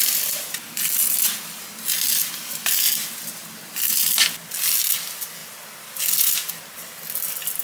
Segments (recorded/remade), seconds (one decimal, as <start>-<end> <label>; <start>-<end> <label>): 0.0-7.6 recorded